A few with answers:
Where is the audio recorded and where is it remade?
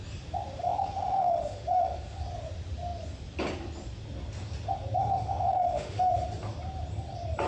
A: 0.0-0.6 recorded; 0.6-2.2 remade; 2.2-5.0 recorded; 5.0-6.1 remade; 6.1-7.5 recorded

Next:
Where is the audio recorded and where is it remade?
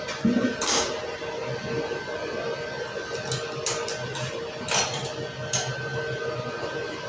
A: 0.0-7.1 recorded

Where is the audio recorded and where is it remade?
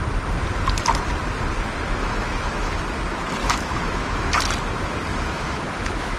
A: 0.0-2.0 recorded; 2.0-2.8 remade; 2.8-3.4 recorded; 3.4-4.4 remade; 4.4-5.1 recorded; 5.1-6.2 remade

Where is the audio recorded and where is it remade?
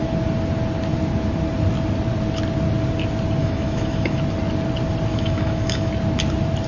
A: 0.0-3.4 recorded; 3.4-4.2 remade; 4.2-5.1 recorded; 5.1-5.9 remade; 5.9-6.7 recorded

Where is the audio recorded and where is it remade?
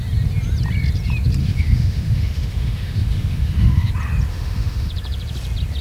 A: 0.0-1.4 recorded; 1.4-3.9 remade; 3.9-4.3 recorded; 4.3-4.9 remade; 4.9-5.8 recorded